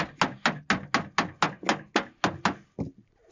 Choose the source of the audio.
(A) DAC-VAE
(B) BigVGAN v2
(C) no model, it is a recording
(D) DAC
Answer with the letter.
C